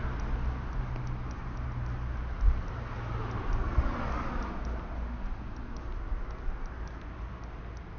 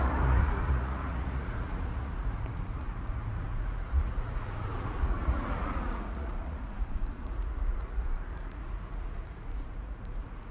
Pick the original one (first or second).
first